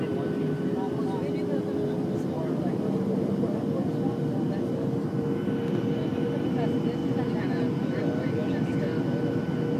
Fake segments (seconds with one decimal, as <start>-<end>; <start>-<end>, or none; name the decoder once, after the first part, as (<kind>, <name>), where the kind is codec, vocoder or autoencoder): 2.6-3.6 (vocoder, BigVGAN v2)